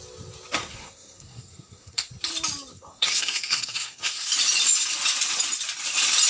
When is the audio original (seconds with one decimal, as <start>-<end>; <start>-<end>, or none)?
0.0-0.6; 2.1-2.7; 4.3-6.3